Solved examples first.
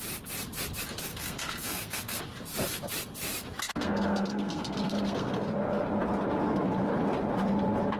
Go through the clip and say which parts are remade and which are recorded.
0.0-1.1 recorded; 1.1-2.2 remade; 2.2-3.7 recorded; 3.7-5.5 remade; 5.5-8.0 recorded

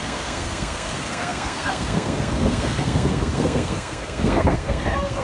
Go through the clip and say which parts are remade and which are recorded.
0.0-5.2 remade

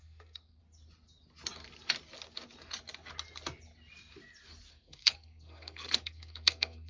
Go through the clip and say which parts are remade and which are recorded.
0.0-0.6 remade; 0.6-4.7 recorded; 4.7-6.9 remade

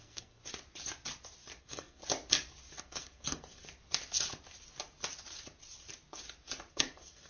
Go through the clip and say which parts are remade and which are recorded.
0.0-0.4 remade; 0.4-1.6 recorded; 1.6-2.0 remade; 2.0-2.8 recorded; 2.8-3.6 remade; 3.6-6.7 recorded; 6.7-7.3 remade

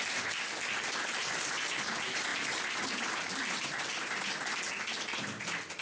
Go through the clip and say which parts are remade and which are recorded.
0.0-5.8 recorded